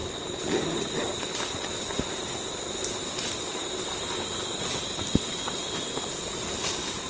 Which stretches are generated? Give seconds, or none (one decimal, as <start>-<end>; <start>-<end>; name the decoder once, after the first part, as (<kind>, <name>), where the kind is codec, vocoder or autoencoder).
none